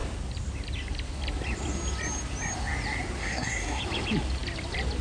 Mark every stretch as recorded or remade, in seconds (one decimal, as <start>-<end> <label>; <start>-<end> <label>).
0.0-3.2 recorded; 3.2-3.8 remade; 3.8-5.0 recorded